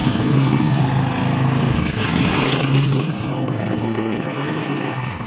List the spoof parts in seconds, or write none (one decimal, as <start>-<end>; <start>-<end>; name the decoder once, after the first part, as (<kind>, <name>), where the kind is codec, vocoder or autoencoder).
0.0-0.8 (codec, SNAC); 1.7-5.3